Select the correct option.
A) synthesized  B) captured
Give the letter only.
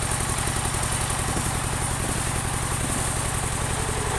B